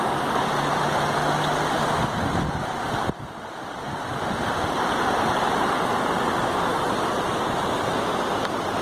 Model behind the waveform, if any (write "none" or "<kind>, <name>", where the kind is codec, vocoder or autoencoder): none